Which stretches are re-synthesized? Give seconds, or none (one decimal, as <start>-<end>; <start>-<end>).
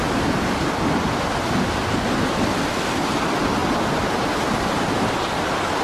none